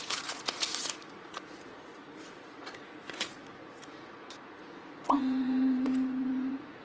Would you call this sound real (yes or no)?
no